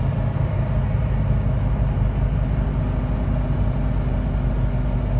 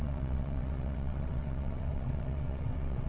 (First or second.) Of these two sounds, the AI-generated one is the second